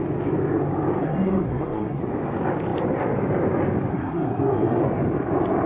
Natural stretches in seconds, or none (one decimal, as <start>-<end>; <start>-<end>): 0.0-1.0; 2.0-3.9; 4.8-5.7